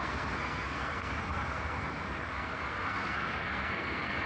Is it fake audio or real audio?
fake